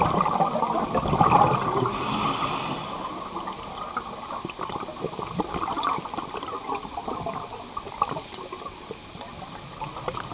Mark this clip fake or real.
real